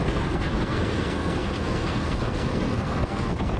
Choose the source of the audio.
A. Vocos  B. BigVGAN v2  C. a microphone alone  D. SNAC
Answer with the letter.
D